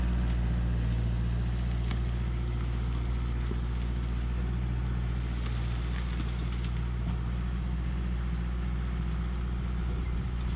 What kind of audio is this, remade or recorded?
recorded